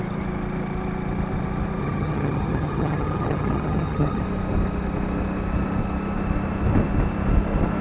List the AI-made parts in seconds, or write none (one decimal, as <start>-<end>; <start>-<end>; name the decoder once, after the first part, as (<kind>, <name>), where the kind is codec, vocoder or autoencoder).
1.8-4.2 (vocoder, HiFi-GAN)